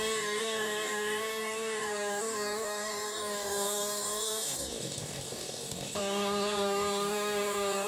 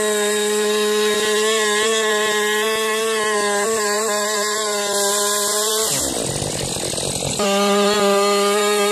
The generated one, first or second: first